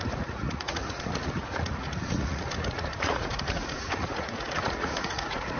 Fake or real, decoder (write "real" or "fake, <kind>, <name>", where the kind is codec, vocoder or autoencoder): fake, vocoder, Vocos